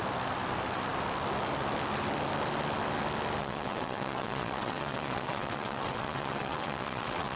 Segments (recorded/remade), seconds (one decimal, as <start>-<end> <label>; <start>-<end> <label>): 0.0-3.4 recorded; 3.4-7.4 remade